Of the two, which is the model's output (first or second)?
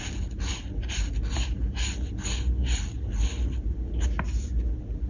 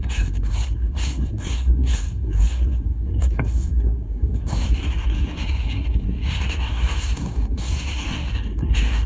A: second